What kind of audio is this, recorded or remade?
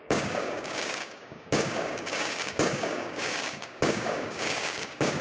remade